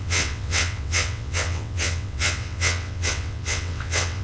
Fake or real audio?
fake